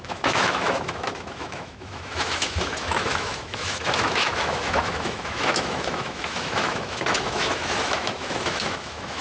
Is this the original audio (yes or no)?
no